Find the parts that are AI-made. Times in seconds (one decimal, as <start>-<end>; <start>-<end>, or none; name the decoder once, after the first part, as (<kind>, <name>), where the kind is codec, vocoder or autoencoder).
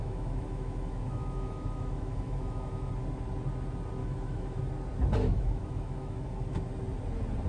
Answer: 0.0-2.9 (autoencoder, DAC-VAE); 4.0-4.6; 5.2-6.7